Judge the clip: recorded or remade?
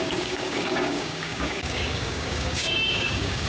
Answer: remade